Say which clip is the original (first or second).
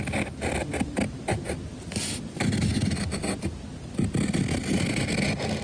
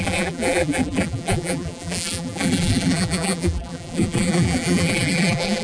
first